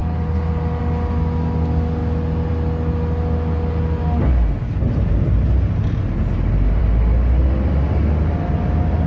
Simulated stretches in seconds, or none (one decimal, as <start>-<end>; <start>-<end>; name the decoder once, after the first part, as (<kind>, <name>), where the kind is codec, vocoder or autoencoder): none